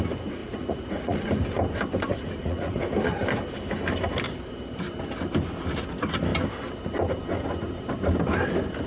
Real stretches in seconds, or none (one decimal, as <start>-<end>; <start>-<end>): 0.0-0.4; 1.3-2.1; 2.8-8.9